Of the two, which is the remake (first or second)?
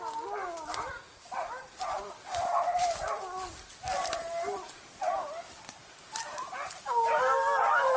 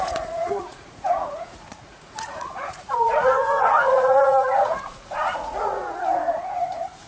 second